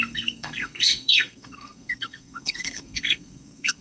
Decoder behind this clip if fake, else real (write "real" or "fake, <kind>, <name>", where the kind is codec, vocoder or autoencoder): fake, codec, SNAC